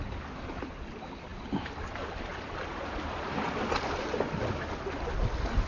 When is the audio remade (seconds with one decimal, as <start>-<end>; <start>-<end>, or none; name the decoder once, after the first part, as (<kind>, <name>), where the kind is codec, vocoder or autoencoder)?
1.3-4.7 (vocoder, BigVGAN v2)

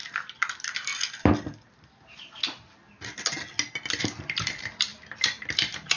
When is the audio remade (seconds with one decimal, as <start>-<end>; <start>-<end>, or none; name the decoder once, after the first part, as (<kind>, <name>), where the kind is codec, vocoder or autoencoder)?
0.0-0.9 (vocoder, BigVGAN v2); 4.0-6.0

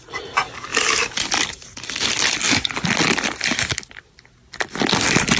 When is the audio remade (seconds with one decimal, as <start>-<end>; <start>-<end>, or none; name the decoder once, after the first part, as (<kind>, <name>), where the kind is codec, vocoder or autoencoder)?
none